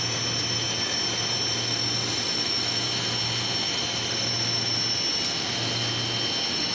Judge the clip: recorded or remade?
recorded